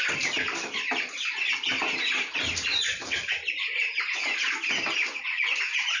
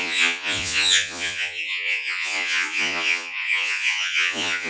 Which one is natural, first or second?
first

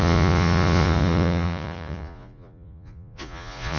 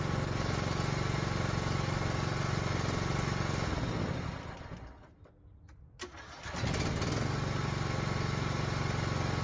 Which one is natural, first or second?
second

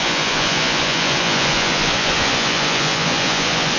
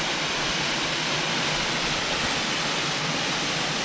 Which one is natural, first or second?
second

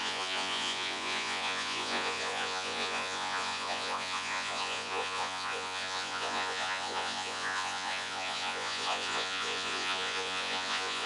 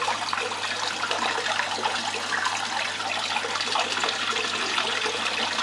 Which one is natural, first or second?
second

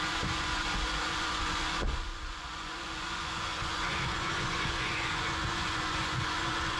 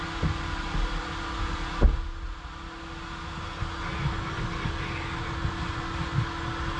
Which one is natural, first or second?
second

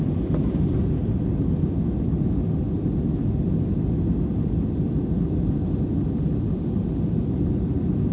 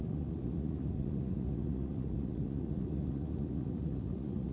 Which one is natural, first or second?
first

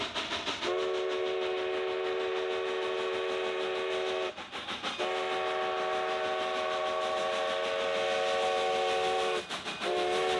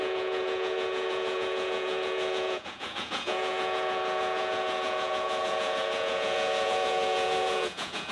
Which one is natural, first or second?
first